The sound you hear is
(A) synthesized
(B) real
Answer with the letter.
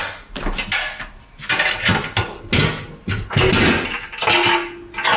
B